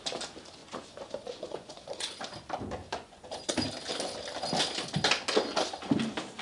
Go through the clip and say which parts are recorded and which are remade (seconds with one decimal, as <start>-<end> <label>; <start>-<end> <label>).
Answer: 0.0-0.6 recorded; 0.6-2.2 remade; 2.2-2.8 recorded; 2.8-3.5 remade; 3.5-6.4 recorded